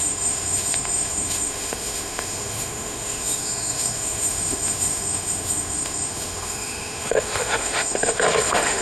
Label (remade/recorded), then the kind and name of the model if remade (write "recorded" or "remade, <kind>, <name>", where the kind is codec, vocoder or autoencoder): remade, autoencoder, DAC-VAE